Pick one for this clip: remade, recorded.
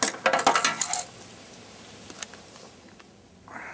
recorded